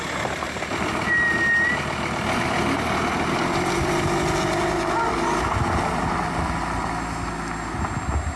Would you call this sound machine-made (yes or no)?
no